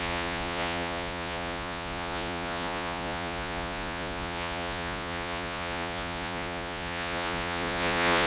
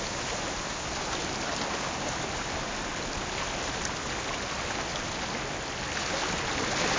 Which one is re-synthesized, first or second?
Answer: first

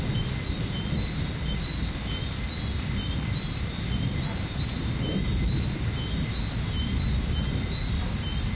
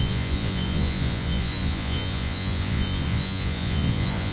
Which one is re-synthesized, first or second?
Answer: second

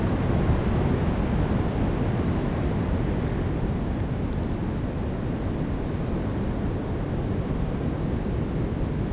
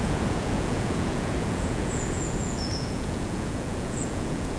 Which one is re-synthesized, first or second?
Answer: second